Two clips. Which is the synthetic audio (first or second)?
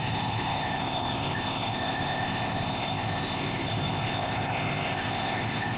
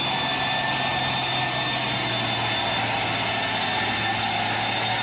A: first